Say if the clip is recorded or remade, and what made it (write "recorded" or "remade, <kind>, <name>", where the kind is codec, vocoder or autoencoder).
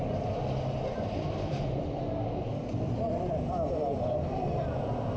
remade, vocoder, BigVGAN v2